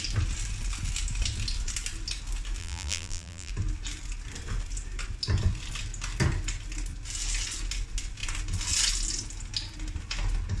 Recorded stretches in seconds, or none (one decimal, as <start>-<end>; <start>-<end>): 0.0-2.6; 3.5-10.6